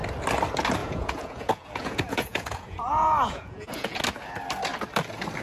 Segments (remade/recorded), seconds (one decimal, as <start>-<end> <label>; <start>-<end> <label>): 0.0-0.8 recorded; 0.8-4.0 remade; 4.0-5.4 recorded